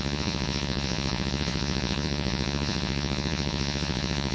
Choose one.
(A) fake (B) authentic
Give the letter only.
A